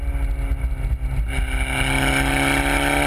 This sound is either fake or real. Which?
real